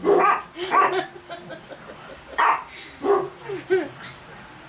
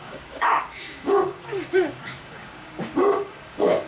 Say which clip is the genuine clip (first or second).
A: first